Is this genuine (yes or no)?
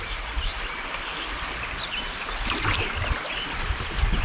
yes